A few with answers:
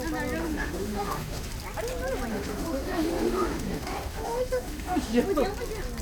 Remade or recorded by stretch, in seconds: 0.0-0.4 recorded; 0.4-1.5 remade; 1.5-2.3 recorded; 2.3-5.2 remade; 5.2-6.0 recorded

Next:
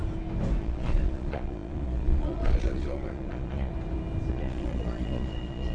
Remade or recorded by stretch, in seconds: 0.0-0.6 recorded; 0.6-3.7 remade; 3.7-4.3 recorded; 4.3-5.7 remade